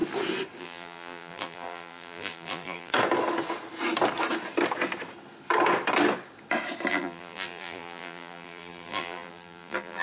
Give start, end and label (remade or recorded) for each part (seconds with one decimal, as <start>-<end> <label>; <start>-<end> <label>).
0.0-0.6 recorded; 0.6-2.9 remade; 2.9-6.9 recorded; 6.9-10.0 remade